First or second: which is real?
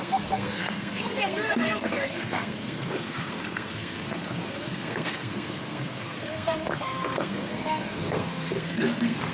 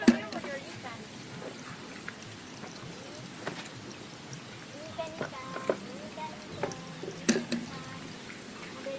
second